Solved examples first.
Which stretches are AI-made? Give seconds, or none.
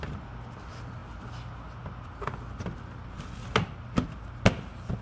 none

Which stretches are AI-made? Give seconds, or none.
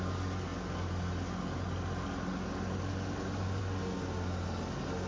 none